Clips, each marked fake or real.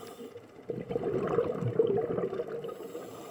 real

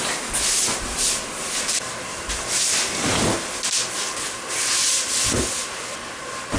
real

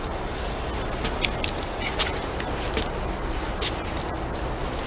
real